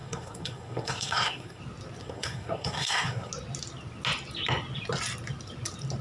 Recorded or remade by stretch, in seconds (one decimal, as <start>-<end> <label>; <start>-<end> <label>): 0.0-1.6 remade; 1.6-2.0 recorded; 2.0-3.3 remade; 3.3-6.0 recorded